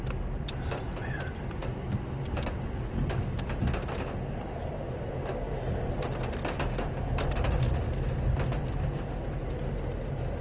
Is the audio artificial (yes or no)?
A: no